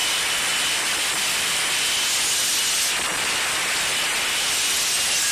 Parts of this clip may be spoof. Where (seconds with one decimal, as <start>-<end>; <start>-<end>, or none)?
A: none